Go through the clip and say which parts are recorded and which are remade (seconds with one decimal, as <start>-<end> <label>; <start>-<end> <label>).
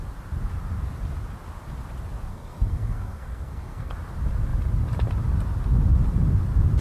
0.0-2.3 recorded; 2.3-3.9 remade; 3.9-6.8 recorded